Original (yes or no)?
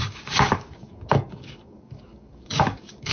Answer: no